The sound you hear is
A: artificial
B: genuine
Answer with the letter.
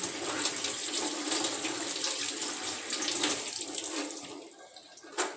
B